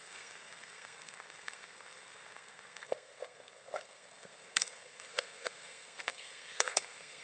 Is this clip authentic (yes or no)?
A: no